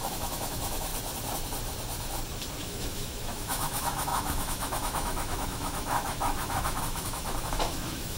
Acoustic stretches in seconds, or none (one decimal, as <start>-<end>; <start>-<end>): 0.9-2.6